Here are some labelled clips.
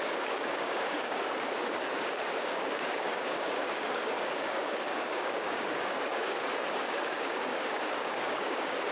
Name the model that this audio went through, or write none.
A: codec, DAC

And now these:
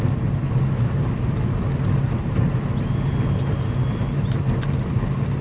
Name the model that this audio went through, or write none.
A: none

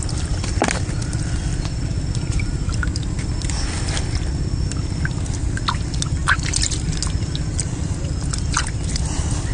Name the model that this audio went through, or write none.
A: none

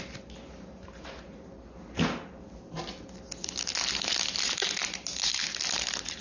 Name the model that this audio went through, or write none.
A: none